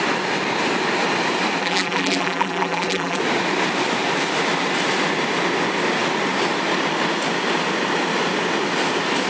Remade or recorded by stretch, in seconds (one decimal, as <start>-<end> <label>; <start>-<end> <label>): 0.0-1.6 recorded; 1.6-3.2 remade; 3.2-9.3 recorded